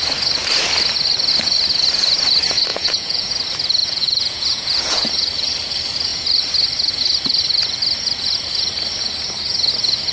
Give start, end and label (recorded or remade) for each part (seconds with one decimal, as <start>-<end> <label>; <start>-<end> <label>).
0.0-2.7 recorded; 2.7-3.3 remade; 3.3-3.8 recorded; 3.8-5.1 remade; 5.1-10.1 recorded